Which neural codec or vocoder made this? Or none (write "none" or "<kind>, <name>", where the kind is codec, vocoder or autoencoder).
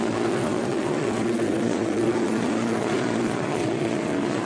vocoder, Vocos